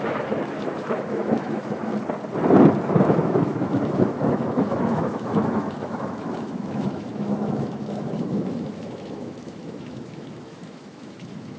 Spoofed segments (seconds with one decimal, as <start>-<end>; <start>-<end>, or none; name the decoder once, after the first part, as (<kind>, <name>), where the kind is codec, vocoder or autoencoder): 0.0-1.9 (autoencoder, DAC-VAE); 2.8-11.6